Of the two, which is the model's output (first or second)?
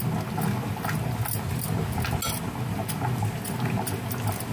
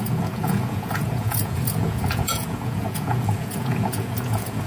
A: second